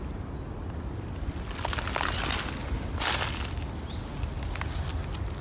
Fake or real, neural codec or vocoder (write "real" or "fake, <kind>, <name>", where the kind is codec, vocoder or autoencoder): real